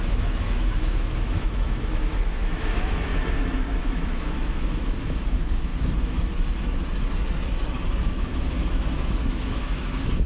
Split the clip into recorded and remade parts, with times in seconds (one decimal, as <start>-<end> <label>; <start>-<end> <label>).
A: 0.0-3.1 remade; 3.1-3.8 recorded; 3.8-5.7 remade; 5.7-8.0 recorded; 8.0-10.3 remade